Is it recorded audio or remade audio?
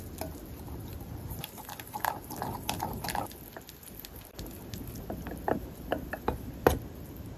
recorded